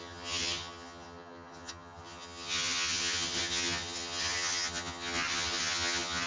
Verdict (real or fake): fake